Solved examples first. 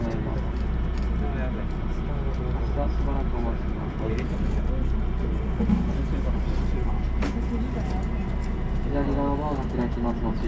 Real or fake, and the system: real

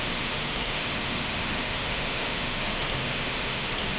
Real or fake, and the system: fake, autoencoder, DAC-VAE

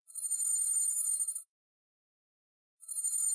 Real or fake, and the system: fake, autoencoder, DAC-VAE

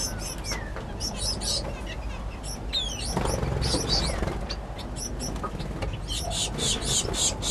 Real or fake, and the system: real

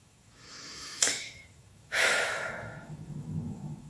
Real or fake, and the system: fake, autoencoder, DAC-VAE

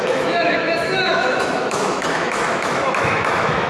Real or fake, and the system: fake, autoencoder, DAC-VAE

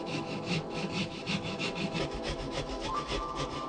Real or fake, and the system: fake, autoencoder, DAC-VAE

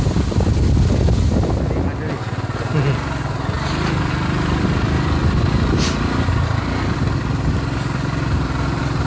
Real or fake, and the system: real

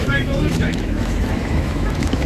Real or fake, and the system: fake, autoencoder, DAC-VAE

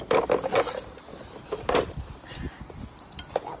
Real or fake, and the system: real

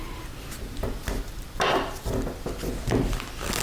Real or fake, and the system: real